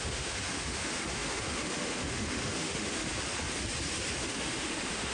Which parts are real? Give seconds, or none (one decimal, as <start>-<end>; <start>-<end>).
3.1-4.1